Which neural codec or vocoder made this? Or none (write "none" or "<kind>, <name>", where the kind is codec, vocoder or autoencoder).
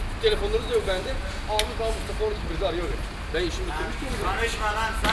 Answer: none